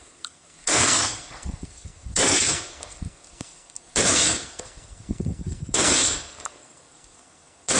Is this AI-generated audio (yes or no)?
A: yes